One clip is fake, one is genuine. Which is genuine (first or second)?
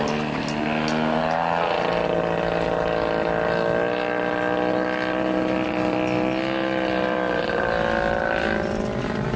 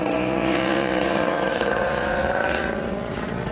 first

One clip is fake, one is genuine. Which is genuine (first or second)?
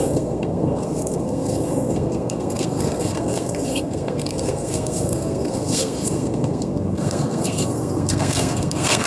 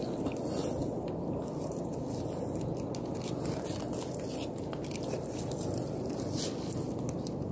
second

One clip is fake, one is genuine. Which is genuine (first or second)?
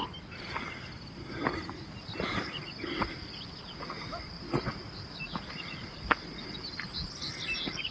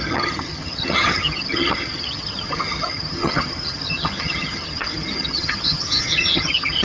first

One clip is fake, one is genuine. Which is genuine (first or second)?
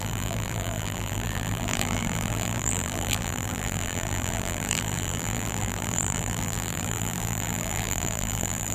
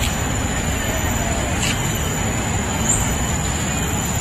second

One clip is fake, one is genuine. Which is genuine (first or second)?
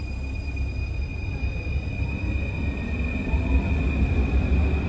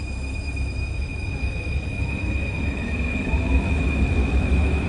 first